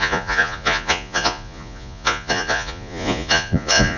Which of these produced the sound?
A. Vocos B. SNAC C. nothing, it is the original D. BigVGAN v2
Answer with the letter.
A